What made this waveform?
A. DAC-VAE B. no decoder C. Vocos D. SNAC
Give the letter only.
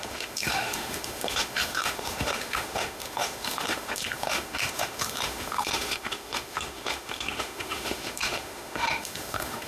A